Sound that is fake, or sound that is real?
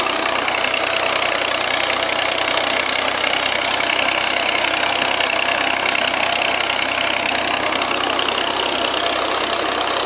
real